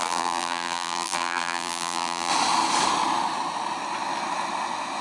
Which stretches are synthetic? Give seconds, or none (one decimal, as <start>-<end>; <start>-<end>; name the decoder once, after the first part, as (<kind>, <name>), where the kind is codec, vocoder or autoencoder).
0.0-2.3 (vocoder, BigVGAN v2)